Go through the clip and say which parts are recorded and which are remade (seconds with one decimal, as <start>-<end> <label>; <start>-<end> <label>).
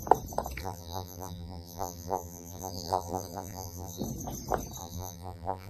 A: 0.0-0.6 recorded; 0.6-4.0 remade; 4.0-4.8 recorded; 4.8-5.7 remade